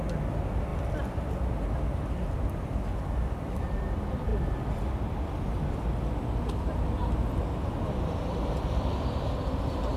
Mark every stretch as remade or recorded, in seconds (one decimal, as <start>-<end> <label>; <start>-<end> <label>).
0.0-10.0 recorded